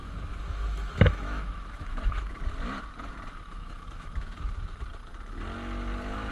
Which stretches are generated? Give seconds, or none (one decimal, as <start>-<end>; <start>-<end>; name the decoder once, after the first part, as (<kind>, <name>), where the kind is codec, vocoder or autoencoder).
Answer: 0.0-2.4 (autoencoder, DAC-VAE); 3.6-4.5

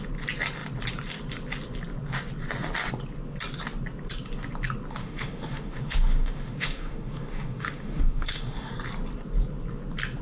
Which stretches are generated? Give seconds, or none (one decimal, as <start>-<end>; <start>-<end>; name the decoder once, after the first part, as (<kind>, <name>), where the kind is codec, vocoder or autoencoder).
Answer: 5.0-8.7 (autoencoder, DAC-VAE)

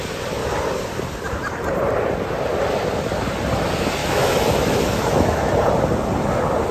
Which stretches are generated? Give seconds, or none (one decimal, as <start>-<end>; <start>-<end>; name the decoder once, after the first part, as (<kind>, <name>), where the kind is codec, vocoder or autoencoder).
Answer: 4.0-5.5 (autoencoder, DAC-VAE)

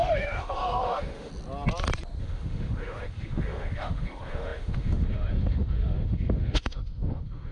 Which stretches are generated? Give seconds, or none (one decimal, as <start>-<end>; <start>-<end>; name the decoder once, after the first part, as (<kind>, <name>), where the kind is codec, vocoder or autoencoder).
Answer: 0.0-1.3 (autoencoder, DAC-VAE); 2.2-7.5

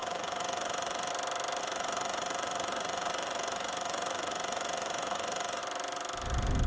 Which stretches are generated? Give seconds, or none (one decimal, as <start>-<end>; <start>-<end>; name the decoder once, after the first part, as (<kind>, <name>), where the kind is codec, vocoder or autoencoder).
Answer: 0.0-1.1 (autoencoder, DAC-VAE); 1.6-5.6

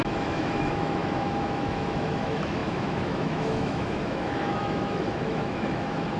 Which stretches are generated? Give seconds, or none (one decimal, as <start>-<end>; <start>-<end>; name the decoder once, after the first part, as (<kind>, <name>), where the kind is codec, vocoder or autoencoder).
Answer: 0.0-6.2 (autoencoder, DAC-VAE)

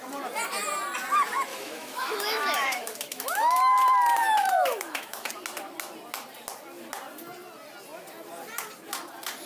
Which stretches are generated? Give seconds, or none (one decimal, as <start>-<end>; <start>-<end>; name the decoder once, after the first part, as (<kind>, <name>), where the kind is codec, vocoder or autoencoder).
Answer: 1.5-3.6 (autoencoder, DAC-VAE); 4.2-5.3